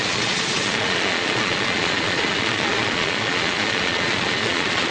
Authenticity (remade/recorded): remade